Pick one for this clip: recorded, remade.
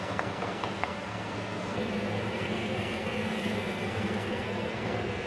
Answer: remade